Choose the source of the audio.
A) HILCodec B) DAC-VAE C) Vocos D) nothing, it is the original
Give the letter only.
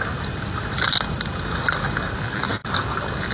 D